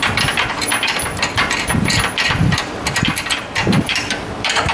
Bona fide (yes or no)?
no